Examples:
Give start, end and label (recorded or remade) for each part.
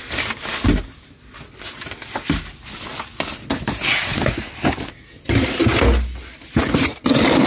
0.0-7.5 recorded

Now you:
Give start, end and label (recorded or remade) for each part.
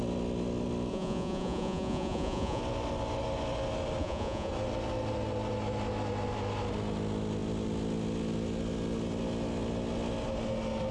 0.0-0.9 recorded; 0.9-2.6 remade; 2.6-4.0 recorded; 4.0-4.5 remade; 4.5-10.9 recorded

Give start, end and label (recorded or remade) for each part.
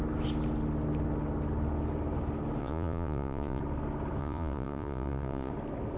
0.0-2.6 recorded; 2.6-3.6 remade; 3.6-4.2 recorded; 4.2-5.5 remade; 5.5-6.0 recorded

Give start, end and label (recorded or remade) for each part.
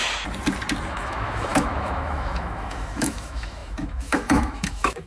0.0-0.9 recorded; 0.9-5.1 remade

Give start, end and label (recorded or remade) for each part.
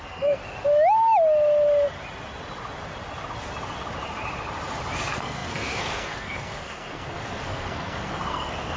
0.0-0.4 remade; 0.4-5.0 recorded; 5.0-8.8 remade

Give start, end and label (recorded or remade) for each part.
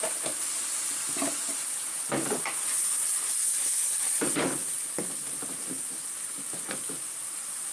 0.0-7.7 recorded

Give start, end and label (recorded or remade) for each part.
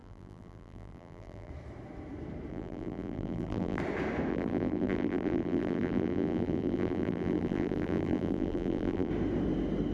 0.0-1.5 remade; 1.5-2.5 recorded; 2.5-3.8 remade; 3.8-4.3 recorded; 4.3-9.1 remade; 9.1-9.9 recorded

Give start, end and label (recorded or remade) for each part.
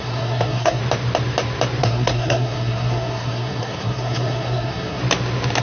0.0-0.8 remade; 0.8-1.8 recorded; 1.8-5.0 remade; 5.0-5.6 recorded